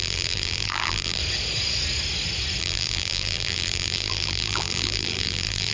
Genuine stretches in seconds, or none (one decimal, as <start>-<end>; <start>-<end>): 1.2-2.6